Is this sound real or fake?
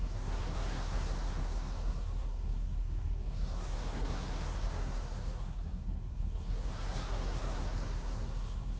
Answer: fake